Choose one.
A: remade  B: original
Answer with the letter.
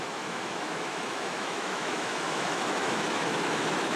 A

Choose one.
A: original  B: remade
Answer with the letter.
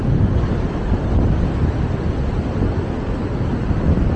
A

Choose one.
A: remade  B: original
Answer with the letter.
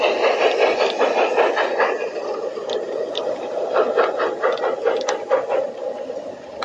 B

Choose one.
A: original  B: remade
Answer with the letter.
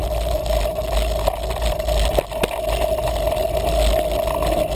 A